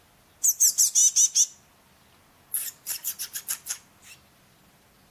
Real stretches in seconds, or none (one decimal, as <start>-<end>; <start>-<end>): 0.0-5.1